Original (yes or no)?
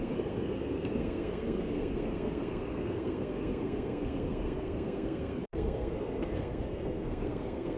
no